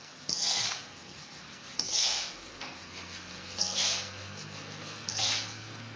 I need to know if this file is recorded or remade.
remade